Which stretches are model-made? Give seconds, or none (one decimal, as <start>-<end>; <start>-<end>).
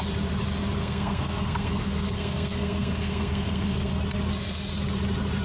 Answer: 0.8-3.9